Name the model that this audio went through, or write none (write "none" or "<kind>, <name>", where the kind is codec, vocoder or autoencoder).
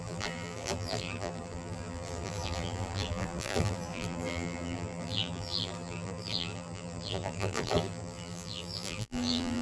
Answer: vocoder, BigVGAN v2